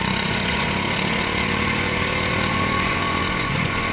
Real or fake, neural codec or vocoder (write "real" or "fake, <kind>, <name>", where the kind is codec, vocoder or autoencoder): fake, vocoder, Vocos